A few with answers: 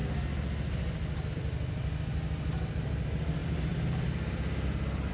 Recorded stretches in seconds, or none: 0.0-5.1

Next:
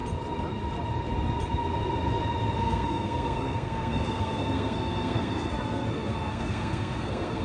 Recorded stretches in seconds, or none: 0.0-2.6

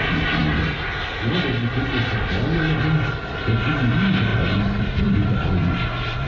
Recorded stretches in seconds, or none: 0.0-6.3

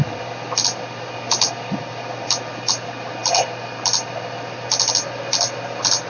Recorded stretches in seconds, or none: 0.0-6.1

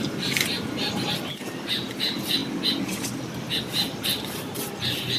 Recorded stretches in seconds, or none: 0.0-5.2

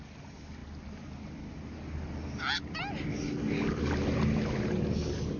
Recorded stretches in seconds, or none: 0.0-5.4

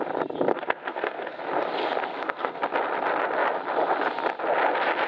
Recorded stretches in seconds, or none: 0.0-0.5; 1.4-2.1; 2.6-5.1

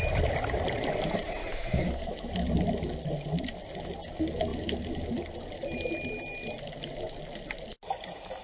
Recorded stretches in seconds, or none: 0.0-1.4; 2.3-8.4